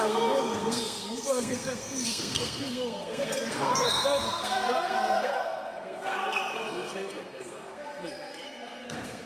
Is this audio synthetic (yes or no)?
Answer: yes